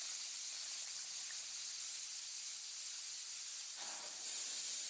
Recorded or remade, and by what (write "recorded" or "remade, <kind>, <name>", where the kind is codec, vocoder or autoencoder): recorded